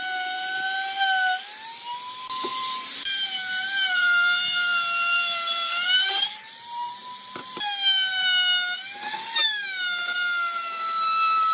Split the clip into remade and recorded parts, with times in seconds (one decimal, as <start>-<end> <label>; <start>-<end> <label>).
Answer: 0.0-2.5 recorded; 2.5-7.6 remade; 7.6-11.5 recorded